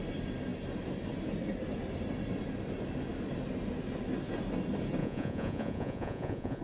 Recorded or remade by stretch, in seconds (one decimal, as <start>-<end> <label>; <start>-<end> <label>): 0.0-5.0 recorded; 5.0-6.6 remade